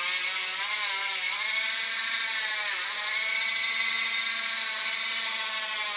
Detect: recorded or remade recorded